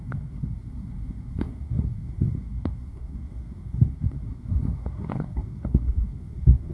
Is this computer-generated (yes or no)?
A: yes